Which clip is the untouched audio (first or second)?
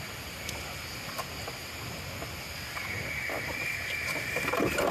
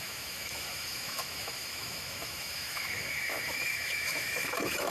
first